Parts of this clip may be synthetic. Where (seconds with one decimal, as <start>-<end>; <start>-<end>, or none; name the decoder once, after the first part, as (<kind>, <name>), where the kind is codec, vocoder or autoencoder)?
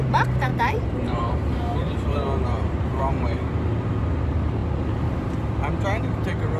0.0-4.6 (vocoder, BigVGAN v2)